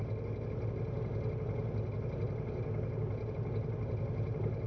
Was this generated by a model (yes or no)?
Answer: no